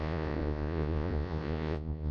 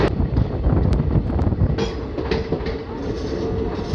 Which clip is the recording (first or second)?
second